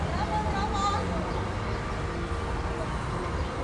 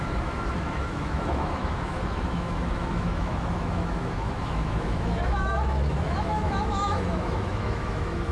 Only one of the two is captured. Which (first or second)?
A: first